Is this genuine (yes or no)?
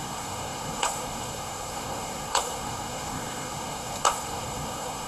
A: no